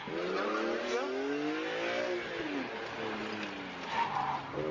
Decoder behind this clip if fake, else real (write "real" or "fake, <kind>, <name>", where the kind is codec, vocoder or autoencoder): real